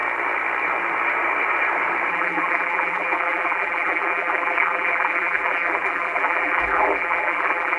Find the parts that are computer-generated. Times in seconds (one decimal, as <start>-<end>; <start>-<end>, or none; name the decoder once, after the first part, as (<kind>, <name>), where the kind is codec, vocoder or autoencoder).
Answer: 2.1-7.8 (vocoder, BigVGAN v2)